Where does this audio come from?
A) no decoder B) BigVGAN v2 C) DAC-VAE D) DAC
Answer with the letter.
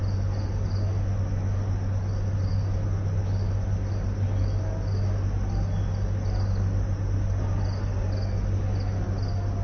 A